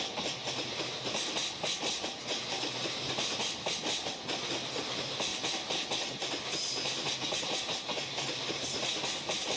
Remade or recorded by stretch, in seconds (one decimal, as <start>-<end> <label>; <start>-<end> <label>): 0.0-9.6 recorded